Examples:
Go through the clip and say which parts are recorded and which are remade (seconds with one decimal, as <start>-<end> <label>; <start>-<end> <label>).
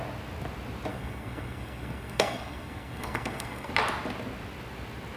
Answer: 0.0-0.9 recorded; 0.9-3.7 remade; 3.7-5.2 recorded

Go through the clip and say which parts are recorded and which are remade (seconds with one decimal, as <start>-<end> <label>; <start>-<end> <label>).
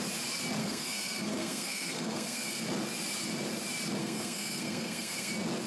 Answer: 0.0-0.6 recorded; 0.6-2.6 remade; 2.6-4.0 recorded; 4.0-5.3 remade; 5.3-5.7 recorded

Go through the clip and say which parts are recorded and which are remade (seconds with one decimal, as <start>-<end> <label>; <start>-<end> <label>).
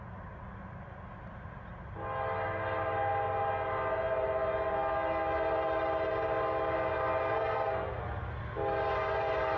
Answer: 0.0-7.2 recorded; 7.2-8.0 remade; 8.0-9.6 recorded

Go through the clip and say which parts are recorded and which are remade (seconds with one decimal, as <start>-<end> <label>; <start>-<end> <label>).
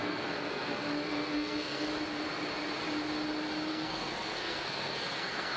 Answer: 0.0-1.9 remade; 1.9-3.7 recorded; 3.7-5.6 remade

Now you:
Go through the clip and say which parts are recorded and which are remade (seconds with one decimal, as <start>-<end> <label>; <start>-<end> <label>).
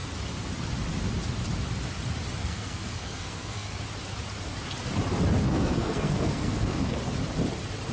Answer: 0.0-2.4 recorded; 2.4-3.8 remade; 3.8-5.4 recorded; 5.4-7.0 remade; 7.0-7.9 recorded